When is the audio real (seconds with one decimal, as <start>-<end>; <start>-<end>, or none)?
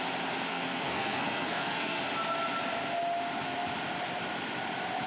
0.0-0.5; 2.0-5.1